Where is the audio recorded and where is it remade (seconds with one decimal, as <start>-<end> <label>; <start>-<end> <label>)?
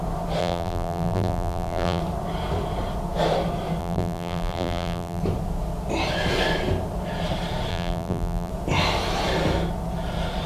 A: 0.0-0.4 recorded; 0.4-2.0 remade; 2.0-3.8 recorded; 3.8-5.2 remade; 5.2-7.7 recorded; 7.7-8.5 remade; 8.5-10.5 recorded